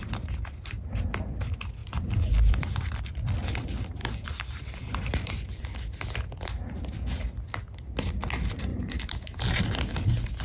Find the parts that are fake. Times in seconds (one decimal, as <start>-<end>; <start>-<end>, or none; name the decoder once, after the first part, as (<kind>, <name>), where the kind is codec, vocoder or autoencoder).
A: 1.8-3.0 (vocoder, BigVGAN v2); 4.0-5.6; 8.7-9.6